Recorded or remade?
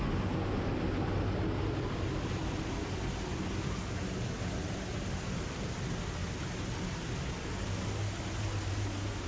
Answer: recorded